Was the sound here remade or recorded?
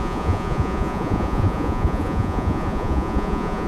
remade